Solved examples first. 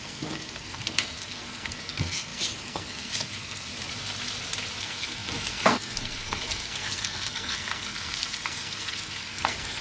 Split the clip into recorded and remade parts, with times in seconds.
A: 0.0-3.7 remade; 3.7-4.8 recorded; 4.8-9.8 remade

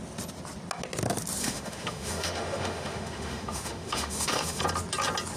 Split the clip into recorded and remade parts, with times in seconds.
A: 0.0-1.4 recorded; 1.4-4.6 remade; 4.6-5.4 recorded

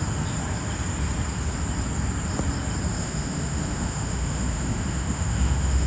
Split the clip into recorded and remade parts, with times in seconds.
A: 0.0-3.0 recorded; 3.0-5.9 remade

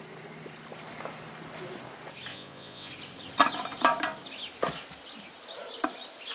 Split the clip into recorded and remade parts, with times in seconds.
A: 0.0-2.3 recorded; 2.3-2.9 remade; 2.9-6.3 recorded

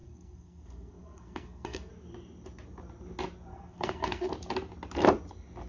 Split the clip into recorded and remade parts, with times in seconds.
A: 0.0-1.9 remade; 1.9-3.5 recorded; 3.5-4.3 remade; 4.3-5.7 recorded

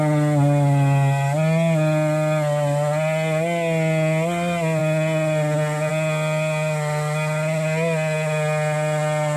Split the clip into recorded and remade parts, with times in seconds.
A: 0.0-9.4 recorded

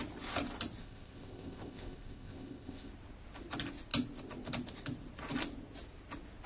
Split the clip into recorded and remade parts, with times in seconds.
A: 0.0-0.8 recorded; 0.8-2.9 remade; 2.9-6.5 recorded